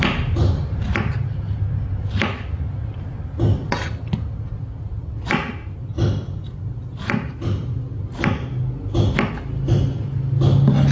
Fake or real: real